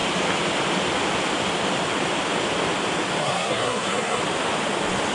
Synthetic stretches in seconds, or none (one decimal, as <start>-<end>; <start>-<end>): 3.2-4.2